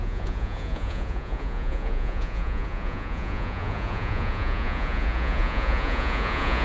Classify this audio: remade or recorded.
remade